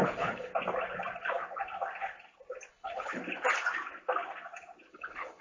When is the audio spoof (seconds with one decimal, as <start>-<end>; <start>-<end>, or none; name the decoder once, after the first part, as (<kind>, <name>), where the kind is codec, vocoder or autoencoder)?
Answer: 0.0-0.5 (codec, HILCodec); 2.7-3.2; 4.9-5.4